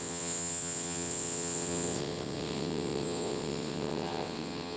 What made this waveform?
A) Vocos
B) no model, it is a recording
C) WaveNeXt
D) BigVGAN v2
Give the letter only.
C